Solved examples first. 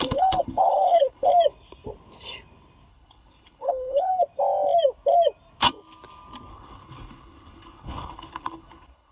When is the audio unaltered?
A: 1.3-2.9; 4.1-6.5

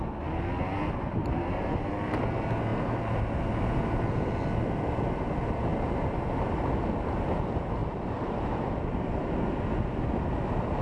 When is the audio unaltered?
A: 0.0-1.2; 1.9-2.7; 3.2-7.8; 8.6-10.8

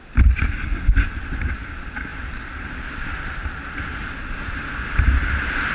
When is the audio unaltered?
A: 3.4-4.4

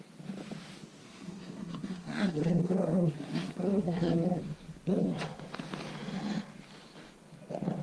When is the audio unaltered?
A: 0.0-1.0; 4.4-7.8